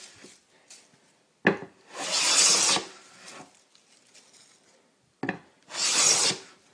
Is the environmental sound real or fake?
real